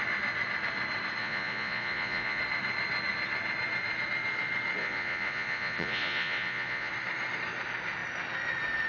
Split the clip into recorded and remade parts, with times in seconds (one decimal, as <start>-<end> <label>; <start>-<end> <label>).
0.0-1.2 recorded; 1.2-2.4 remade; 2.4-4.8 recorded; 4.8-6.9 remade; 6.9-8.9 recorded